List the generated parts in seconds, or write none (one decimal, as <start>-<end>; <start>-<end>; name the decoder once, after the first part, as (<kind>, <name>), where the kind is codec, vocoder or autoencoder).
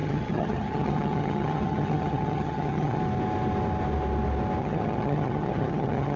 0.0-3.0 (vocoder, HiFi-GAN); 4.6-6.2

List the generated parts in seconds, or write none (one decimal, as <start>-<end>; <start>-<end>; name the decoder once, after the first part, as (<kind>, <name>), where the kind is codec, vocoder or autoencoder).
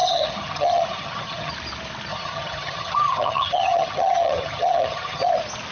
0.0-1.5 (vocoder, HiFi-GAN); 2.1-5.3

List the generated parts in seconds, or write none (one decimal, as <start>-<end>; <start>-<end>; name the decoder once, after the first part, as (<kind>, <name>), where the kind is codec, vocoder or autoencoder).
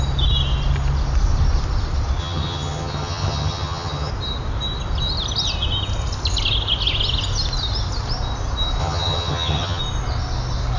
2.2-4.1 (vocoder, HiFi-GAN); 8.8-9.8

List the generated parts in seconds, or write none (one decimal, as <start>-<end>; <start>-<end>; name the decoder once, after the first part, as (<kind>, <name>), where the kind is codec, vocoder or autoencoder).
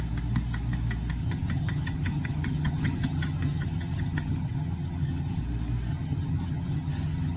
1.2-5.4 (vocoder, HiFi-GAN); 5.9-7.4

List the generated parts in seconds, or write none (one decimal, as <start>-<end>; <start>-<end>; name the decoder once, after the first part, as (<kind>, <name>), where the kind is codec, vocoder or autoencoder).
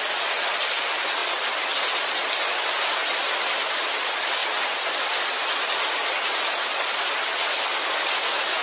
none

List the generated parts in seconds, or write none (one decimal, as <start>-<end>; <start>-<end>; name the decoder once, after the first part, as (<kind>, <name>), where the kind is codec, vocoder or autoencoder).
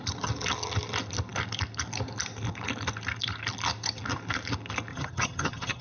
4.9-5.8 (vocoder, HiFi-GAN)